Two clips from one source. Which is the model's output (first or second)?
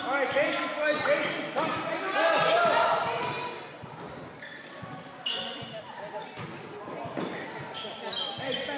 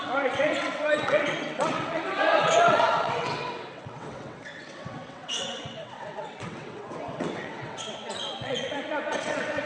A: second